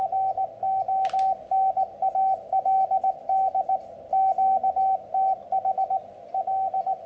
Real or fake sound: real